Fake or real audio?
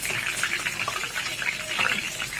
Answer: real